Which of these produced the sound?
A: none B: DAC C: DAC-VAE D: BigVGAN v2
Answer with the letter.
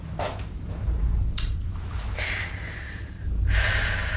D